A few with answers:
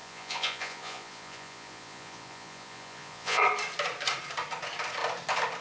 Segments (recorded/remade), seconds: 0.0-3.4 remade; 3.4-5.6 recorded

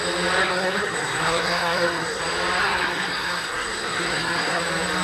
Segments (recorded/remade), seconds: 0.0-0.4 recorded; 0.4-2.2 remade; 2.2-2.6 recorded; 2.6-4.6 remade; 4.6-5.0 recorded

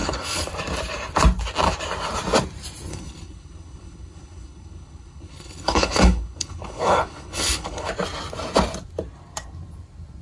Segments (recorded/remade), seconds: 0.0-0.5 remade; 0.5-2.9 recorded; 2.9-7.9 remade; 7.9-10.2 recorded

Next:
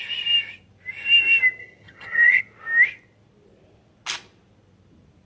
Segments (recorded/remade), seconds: 0.0-1.6 recorded; 1.6-2.4 remade; 2.4-5.3 recorded

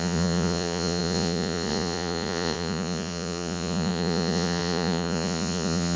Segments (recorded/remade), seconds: 0.0-6.0 remade